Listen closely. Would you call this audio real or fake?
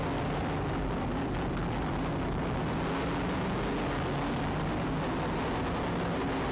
real